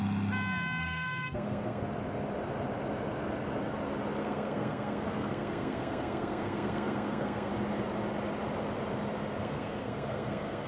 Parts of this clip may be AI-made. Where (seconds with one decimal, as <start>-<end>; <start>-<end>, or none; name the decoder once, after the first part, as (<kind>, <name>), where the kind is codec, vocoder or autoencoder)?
0.8-1.8 (codec, SNAC); 4.2-7.5; 9.4-10.7